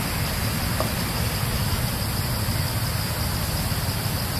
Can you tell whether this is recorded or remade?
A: recorded